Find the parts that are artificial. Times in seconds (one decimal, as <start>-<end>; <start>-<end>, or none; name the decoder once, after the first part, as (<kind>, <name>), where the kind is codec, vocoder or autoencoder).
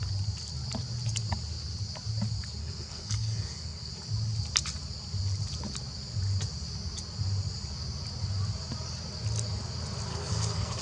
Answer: 2.6-3.9 (codec, SNAC); 10.1-10.8